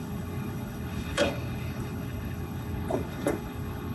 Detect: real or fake fake